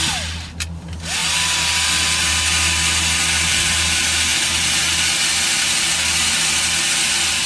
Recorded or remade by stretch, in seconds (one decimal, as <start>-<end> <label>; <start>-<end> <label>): 0.0-7.5 recorded

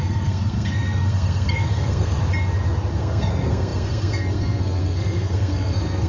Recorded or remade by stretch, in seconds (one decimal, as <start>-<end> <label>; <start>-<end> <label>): 0.0-2.2 remade; 2.2-2.9 recorded; 2.9-6.1 remade

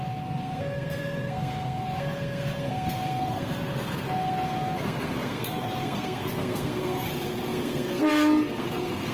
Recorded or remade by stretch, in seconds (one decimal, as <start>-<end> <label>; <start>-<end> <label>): 0.0-9.1 remade

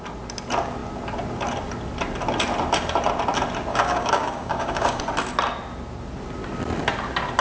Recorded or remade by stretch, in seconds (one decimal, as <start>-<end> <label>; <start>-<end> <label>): 0.0-3.7 recorded; 3.7-5.0 remade; 5.0-7.4 recorded

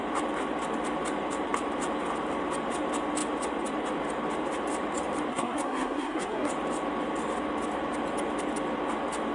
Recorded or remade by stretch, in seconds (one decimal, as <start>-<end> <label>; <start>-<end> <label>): 0.0-5.3 recorded; 5.3-6.5 remade; 6.5-9.3 recorded